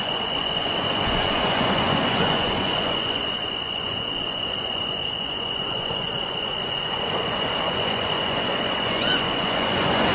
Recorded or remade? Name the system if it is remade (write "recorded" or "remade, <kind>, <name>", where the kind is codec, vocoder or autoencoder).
remade, vocoder, Vocos